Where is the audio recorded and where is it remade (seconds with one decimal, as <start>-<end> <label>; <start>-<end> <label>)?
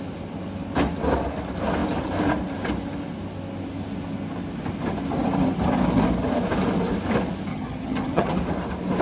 0.0-7.5 recorded; 7.5-8.3 remade; 8.3-9.0 recorded